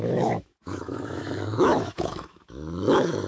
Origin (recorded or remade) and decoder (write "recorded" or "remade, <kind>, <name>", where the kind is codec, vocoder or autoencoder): remade, autoencoder, DAC-VAE